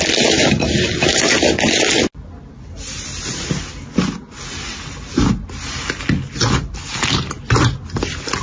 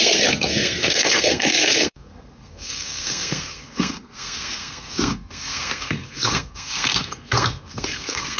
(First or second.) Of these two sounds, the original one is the first